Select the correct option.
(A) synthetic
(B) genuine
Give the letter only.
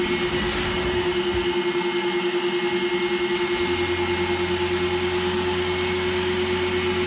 B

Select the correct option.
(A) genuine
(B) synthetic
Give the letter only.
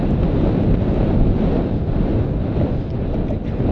A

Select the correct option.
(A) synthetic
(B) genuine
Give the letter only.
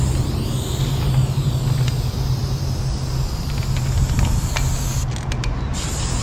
B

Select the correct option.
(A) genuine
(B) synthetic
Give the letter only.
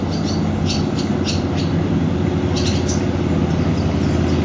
A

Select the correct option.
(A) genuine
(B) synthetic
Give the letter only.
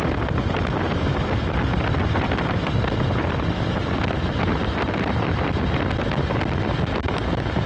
A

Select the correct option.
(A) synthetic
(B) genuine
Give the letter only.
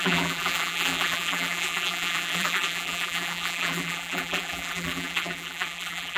A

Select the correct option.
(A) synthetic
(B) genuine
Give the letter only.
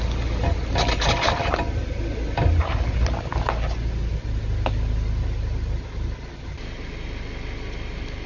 B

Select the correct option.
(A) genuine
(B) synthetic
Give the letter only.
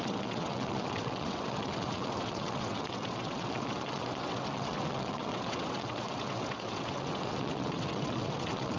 B